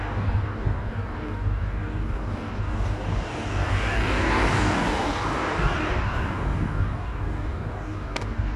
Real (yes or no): no